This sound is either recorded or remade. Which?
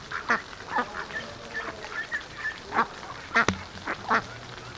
recorded